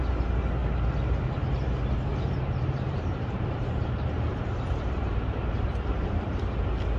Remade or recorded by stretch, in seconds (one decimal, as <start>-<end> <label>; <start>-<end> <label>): 0.0-2.1 recorded; 2.1-6.3 remade; 6.3-7.0 recorded

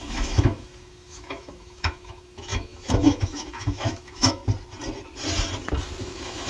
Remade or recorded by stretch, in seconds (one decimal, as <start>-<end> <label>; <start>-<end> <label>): 0.0-4.4 remade; 4.4-6.0 recorded; 6.0-6.5 remade

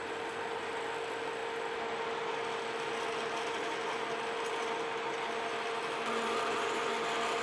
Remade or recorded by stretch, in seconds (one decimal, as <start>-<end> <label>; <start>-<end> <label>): 0.0-7.4 recorded